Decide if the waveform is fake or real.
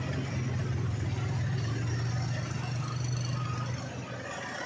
real